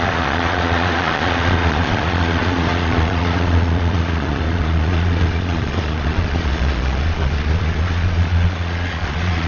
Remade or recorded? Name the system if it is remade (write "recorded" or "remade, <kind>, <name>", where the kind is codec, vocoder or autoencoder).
remade, vocoder, Vocos